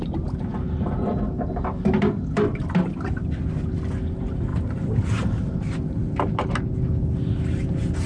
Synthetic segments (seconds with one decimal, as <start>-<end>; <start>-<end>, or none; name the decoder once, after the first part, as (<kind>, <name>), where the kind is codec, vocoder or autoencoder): none